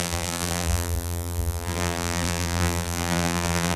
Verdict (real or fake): fake